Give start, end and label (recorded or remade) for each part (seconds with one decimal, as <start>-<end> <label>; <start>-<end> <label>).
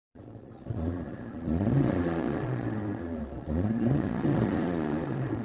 0.0-5.4 remade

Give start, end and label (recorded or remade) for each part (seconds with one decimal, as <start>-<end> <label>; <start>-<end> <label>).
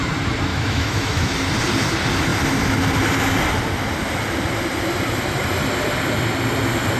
0.0-0.5 recorded; 0.5-1.3 remade; 1.3-7.0 recorded